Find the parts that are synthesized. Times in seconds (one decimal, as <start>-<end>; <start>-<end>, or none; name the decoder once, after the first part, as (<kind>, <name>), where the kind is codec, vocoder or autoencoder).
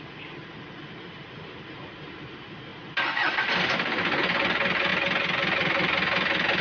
none